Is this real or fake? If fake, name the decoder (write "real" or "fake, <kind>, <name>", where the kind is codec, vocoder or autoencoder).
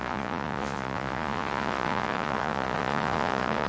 fake, vocoder, Vocos